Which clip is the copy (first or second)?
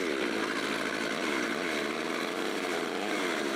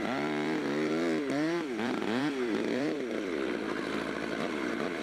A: second